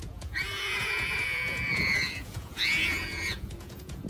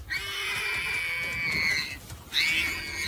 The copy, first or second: first